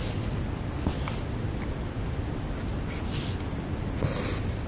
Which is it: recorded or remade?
recorded